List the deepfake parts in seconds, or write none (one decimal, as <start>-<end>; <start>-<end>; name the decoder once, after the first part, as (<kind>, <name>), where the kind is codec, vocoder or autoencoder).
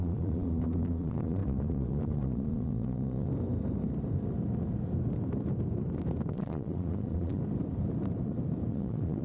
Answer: 0.0-3.3 (vocoder, Vocos); 6.3-7.4; 8.7-9.2